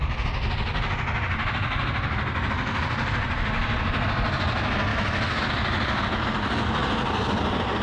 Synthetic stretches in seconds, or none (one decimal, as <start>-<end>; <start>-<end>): 4.9-5.4